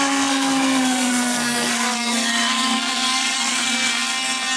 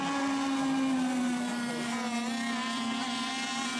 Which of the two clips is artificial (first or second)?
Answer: first